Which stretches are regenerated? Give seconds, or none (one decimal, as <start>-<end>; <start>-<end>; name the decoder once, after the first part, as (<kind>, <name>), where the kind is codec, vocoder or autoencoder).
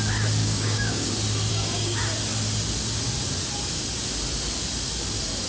0.4-1.1 (codec, DAC); 1.5-2.0